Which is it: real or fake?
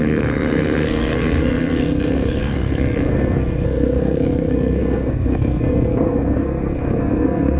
fake